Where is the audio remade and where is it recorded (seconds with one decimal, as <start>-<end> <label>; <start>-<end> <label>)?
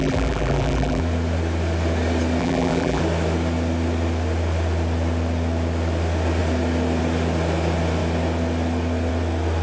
0.0-1.0 remade; 1.0-2.4 recorded; 2.4-3.0 remade; 3.0-9.6 recorded